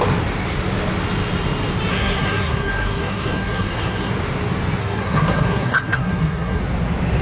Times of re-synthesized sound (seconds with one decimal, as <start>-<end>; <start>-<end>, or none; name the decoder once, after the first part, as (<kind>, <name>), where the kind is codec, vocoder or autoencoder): 1.9-4.1 (codec, SNAC); 4.8-6.6